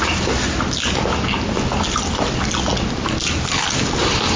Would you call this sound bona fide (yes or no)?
yes